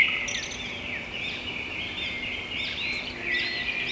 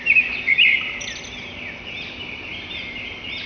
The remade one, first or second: second